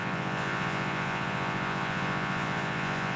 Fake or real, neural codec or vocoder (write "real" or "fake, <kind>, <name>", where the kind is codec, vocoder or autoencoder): fake, vocoder, Vocos